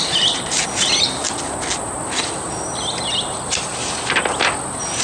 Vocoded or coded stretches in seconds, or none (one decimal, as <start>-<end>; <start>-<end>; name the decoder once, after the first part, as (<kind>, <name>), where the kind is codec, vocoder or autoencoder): none